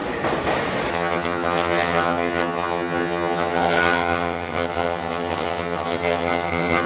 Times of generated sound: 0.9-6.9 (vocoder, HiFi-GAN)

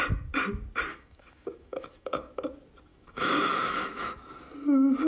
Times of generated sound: 0.9-2.3 (autoencoder, DAC-VAE); 2.9-4.3

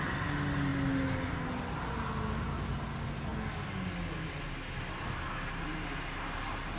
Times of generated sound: none

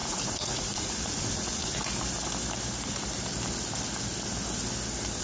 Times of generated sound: 0.0-1.8 (vocoder, Vocos)

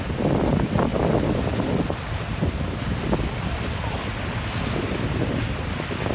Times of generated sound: none

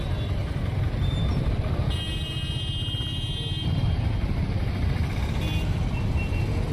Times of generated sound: 0.4-1.3 (vocoder, BigVGAN v2)